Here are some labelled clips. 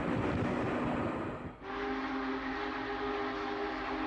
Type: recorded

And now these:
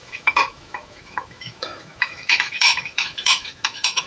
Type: remade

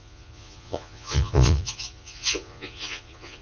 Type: remade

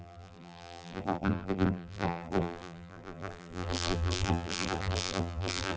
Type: remade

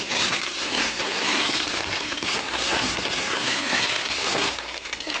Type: remade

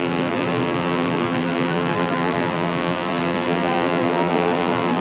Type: remade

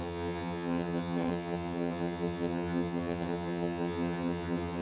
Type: remade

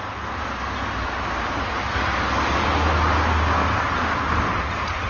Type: recorded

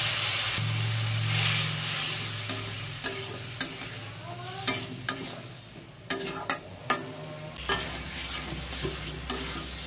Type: recorded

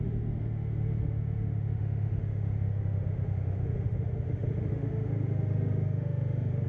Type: remade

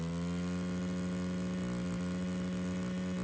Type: recorded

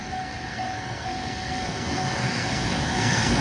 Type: remade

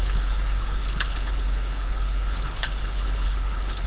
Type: remade